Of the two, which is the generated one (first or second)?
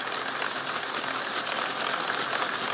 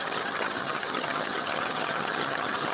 second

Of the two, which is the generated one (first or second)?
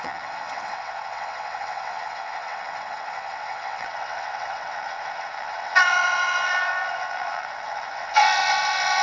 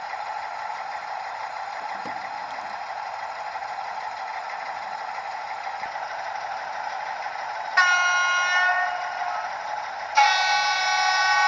first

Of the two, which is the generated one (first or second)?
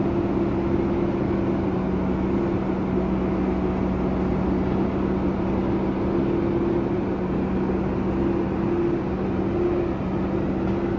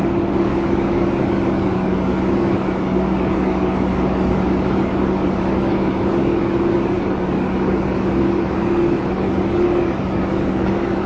second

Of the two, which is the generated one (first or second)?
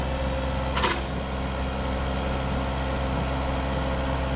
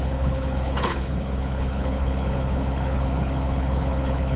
second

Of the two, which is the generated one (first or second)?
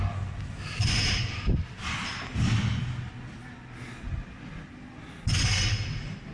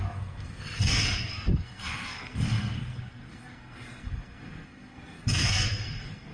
second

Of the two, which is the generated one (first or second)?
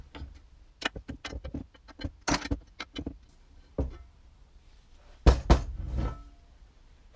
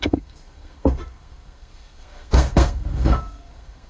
second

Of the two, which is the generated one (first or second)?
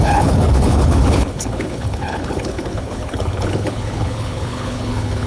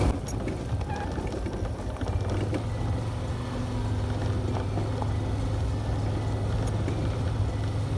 first